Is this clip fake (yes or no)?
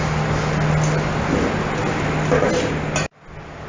no